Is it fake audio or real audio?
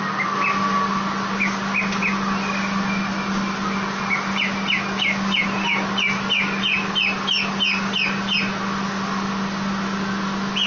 real